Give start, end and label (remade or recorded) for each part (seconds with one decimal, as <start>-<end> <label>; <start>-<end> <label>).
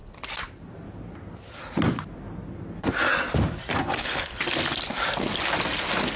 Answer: 0.0-3.8 recorded; 3.8-4.4 remade; 4.4-6.2 recorded